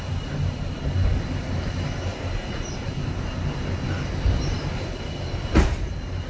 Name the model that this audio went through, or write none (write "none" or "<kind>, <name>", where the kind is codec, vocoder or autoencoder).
none